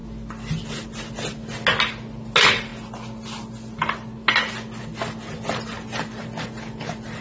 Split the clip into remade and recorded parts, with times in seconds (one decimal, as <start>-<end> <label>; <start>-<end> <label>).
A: 0.0-7.2 recorded